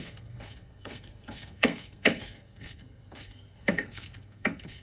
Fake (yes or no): yes